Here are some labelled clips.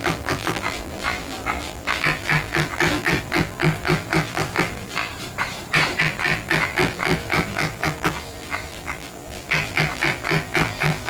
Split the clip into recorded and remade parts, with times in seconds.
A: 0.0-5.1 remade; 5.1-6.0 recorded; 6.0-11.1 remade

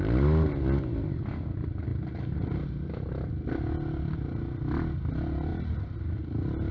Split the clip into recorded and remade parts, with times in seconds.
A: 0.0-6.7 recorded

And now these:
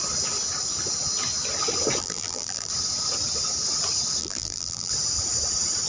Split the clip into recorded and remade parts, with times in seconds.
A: 0.0-2.0 recorded; 2.0-2.7 remade; 2.7-4.2 recorded; 4.2-4.9 remade; 4.9-5.9 recorded

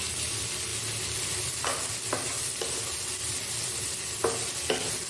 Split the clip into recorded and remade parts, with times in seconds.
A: 0.0-5.1 recorded

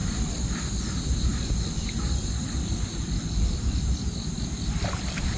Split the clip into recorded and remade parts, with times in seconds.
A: 0.0-1.3 remade; 1.3-4.5 recorded; 4.5-5.4 remade

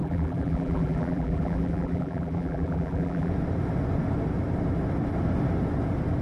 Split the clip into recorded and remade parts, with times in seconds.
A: 0.0-3.3 remade; 3.3-6.2 recorded